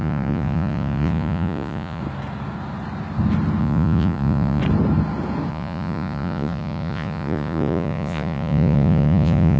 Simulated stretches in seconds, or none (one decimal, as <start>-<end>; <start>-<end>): 0.0-2.0; 3.6-4.6; 5.5-9.6